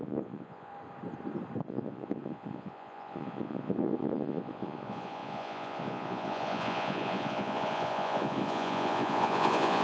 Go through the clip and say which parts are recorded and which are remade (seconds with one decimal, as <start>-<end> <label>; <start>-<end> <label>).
0.0-0.7 remade; 0.7-1.6 recorded; 1.6-9.8 remade